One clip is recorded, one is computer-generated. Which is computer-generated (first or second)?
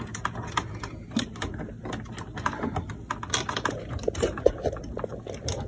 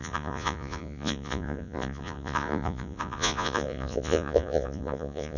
second